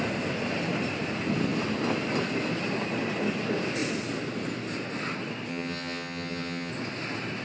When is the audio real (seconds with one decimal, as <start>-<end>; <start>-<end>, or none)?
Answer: 0.0-5.5; 6.7-7.4